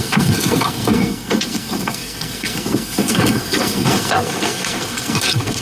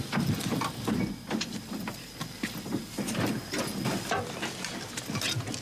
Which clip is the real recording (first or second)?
second